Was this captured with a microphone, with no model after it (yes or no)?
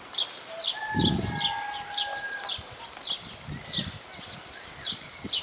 yes